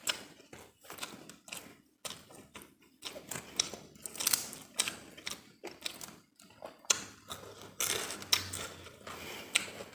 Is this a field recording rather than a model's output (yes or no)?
yes